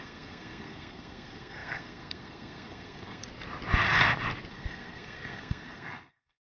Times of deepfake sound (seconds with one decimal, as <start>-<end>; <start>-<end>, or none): 0.0-3.2; 4.5-6.6